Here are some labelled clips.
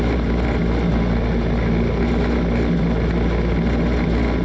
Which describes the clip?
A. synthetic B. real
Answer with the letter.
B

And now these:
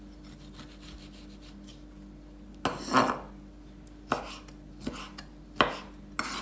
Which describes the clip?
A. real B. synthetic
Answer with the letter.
A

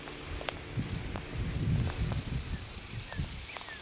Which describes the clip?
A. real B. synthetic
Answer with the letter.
A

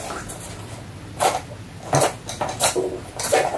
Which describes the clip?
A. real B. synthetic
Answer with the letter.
A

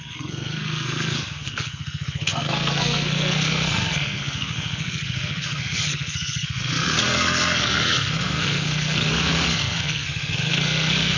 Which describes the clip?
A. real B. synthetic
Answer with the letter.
B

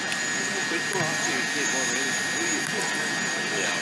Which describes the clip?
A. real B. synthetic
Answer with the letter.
A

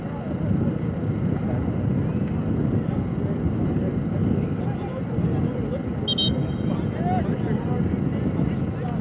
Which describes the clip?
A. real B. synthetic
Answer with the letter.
A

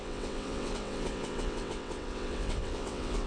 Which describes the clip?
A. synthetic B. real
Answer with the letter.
A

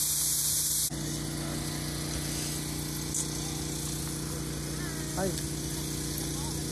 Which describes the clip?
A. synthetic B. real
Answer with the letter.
B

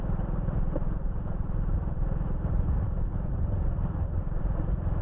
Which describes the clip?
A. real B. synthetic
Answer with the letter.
B